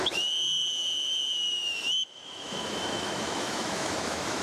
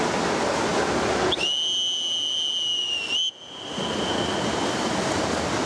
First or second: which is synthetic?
first